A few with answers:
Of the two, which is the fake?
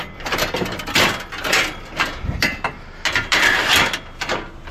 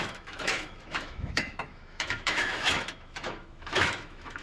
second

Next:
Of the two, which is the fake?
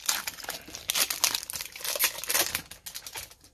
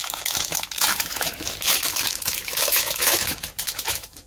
second